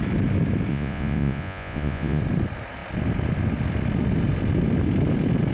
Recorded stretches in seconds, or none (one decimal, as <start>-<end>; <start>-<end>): 0.0-0.7; 2.2-5.5